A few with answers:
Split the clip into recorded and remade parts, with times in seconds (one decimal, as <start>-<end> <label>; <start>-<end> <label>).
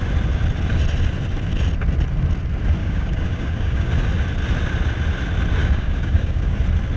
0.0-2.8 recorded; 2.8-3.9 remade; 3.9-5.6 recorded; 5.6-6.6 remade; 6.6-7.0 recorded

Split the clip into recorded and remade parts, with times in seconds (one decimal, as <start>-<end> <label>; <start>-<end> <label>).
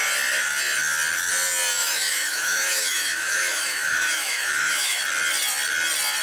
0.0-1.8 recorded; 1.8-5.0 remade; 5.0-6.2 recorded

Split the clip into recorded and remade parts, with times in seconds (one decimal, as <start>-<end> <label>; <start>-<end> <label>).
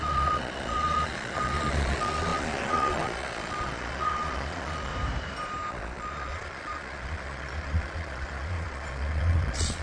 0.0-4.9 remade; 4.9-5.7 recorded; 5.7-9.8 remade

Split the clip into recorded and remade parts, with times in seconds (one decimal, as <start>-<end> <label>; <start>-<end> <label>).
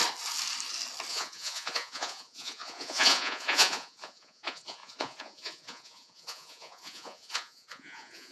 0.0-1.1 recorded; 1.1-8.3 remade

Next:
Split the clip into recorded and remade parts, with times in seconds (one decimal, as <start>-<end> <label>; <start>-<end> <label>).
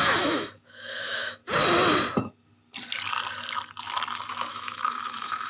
0.0-1.4 remade; 1.4-4.3 recorded; 4.3-5.5 remade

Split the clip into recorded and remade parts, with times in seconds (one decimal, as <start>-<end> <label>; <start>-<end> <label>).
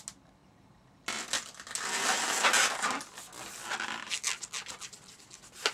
0.0-5.7 recorded